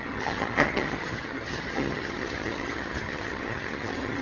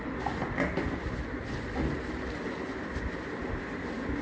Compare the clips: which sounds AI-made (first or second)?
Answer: first